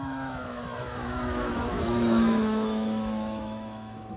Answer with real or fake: fake